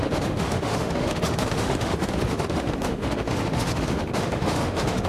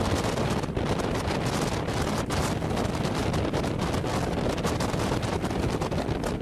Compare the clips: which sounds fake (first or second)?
first